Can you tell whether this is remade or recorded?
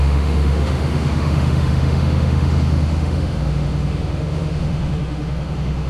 remade